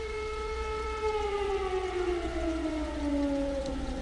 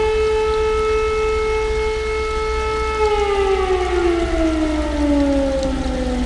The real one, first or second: second